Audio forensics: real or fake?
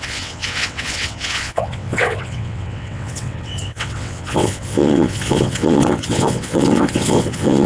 fake